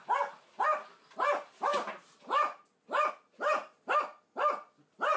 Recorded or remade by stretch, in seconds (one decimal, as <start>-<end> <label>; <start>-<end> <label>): 0.0-5.2 recorded